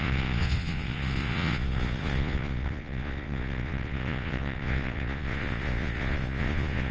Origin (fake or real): fake